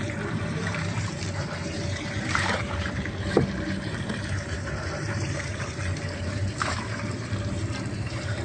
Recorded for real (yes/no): no